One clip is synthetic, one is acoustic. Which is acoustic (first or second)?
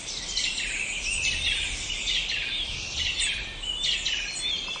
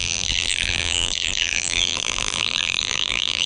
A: first